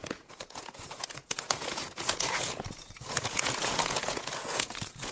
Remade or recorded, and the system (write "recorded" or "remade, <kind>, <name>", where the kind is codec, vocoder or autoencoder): remade, vocoder, Vocos